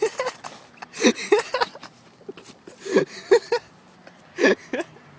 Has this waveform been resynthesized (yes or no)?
no